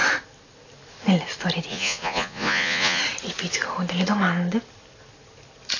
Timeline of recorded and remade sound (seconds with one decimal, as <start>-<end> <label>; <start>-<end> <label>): 0.0-1.7 recorded; 1.7-3.0 remade; 3.0-5.8 recorded